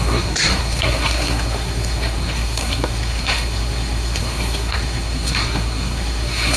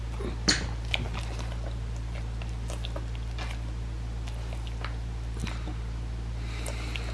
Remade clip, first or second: first